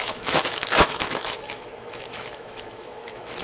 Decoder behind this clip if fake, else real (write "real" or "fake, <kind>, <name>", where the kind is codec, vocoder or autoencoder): fake, autoencoder, DAC-VAE